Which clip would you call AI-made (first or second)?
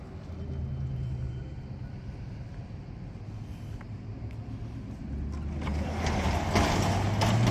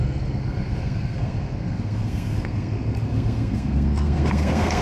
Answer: second